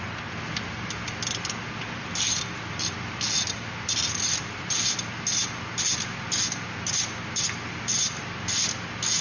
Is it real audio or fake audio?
real